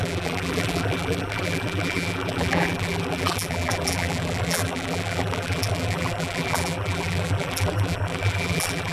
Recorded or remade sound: remade